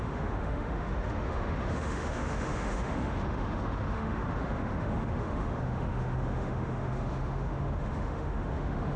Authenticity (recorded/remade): remade